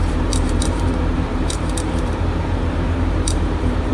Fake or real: fake